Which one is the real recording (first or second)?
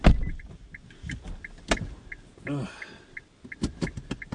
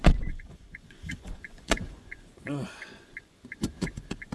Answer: first